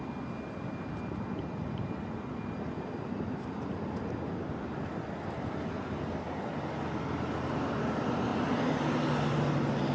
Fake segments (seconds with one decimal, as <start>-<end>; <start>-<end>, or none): none